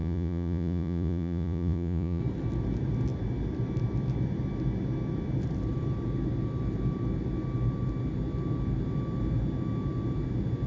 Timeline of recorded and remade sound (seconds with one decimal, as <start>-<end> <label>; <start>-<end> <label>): 0.0-2.2 remade; 2.2-10.7 recorded